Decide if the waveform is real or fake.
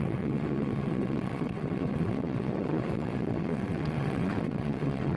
fake